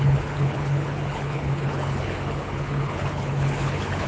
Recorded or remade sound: remade